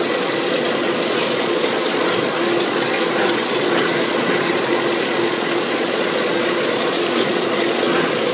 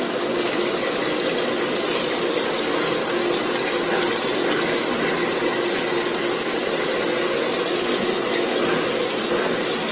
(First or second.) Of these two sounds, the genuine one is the second